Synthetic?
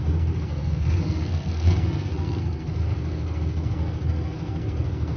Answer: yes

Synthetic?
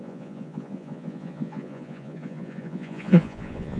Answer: yes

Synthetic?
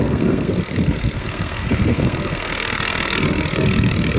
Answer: yes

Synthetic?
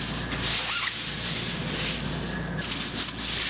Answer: no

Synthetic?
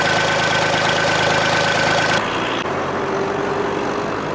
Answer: no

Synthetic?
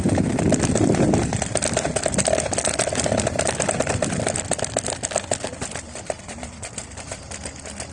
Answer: no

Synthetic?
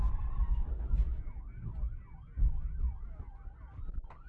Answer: no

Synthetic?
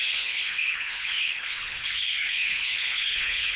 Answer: yes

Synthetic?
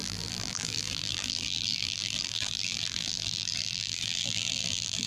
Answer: yes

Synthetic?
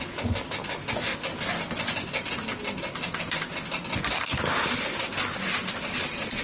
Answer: no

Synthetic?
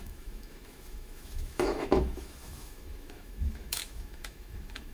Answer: yes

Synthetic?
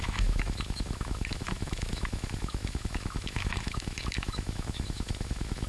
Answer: yes